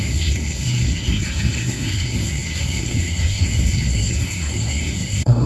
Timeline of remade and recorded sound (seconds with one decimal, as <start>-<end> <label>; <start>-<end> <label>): 0.0-5.5 remade